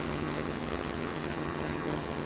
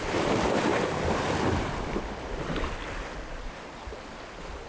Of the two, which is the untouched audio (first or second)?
second